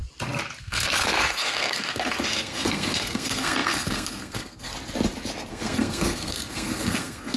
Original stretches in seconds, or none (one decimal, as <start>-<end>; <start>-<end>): 0.0-0.6; 4.7-5.5